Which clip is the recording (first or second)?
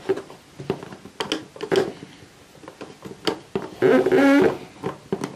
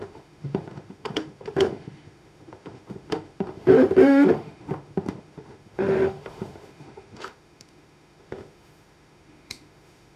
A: first